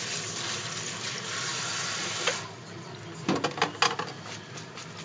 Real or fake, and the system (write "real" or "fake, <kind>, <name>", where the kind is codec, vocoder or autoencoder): real